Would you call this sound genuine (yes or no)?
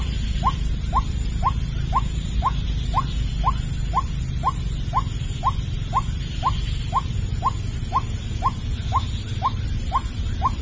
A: yes